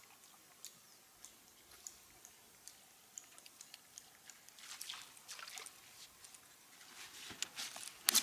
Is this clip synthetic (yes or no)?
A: no